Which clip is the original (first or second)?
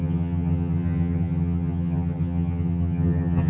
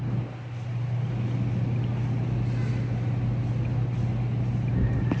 second